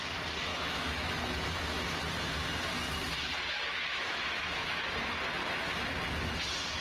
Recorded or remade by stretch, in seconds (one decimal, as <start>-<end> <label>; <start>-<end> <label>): 0.0-0.5 recorded; 0.5-1.2 remade; 1.2-3.9 recorded; 3.9-4.6 remade; 4.6-6.8 recorded